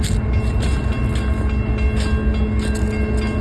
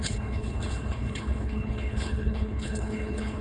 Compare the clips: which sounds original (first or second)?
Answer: first